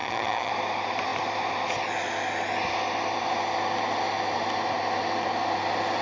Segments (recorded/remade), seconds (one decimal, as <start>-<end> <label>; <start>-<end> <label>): 0.0-0.5 remade; 0.5-6.0 recorded